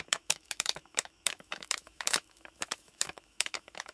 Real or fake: fake